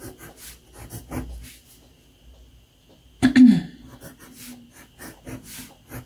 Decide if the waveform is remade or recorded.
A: recorded